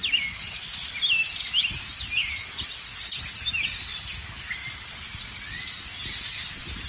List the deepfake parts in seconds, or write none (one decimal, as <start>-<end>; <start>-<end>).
4.6-5.2